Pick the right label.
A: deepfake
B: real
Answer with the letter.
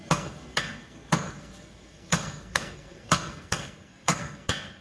A